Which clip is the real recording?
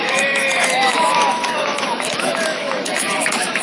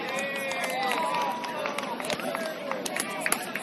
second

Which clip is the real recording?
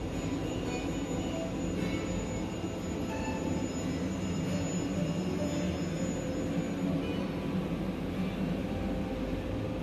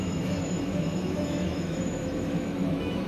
first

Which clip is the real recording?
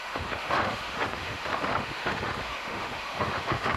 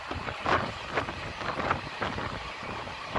second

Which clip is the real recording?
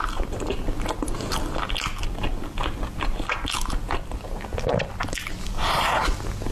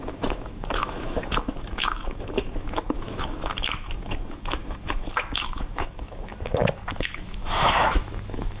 first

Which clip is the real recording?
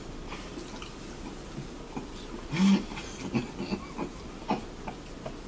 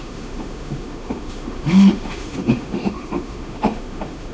first